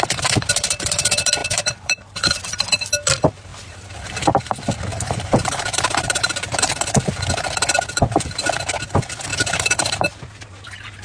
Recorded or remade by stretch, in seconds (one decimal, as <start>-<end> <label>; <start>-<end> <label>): 0.0-1.4 recorded; 1.4-2.0 remade; 2.0-3.5 recorded; 3.5-4.4 remade; 4.4-4.9 recorded; 4.9-6.7 remade; 6.7-9.3 recorded; 9.3-10.0 remade; 10.0-11.0 recorded